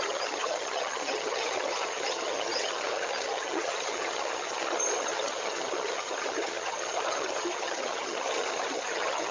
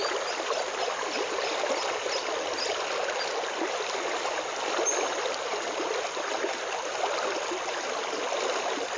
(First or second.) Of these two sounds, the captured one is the second